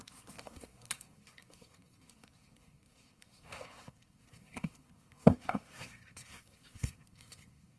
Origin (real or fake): fake